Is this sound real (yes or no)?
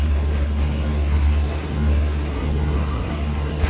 no